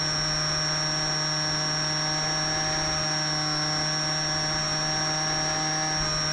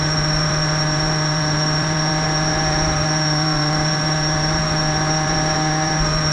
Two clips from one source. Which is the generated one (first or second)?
second